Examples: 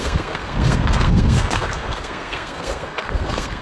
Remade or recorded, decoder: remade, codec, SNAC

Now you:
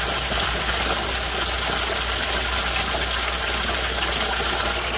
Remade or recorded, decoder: recorded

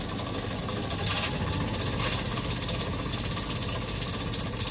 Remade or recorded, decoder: recorded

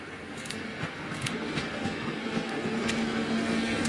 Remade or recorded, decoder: remade, codec, SNAC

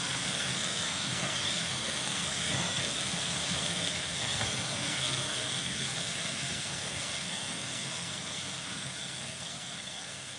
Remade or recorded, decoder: remade, codec, SNAC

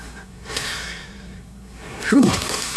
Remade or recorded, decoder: remade, codec, SNAC